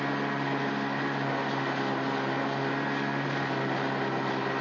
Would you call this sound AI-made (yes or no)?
no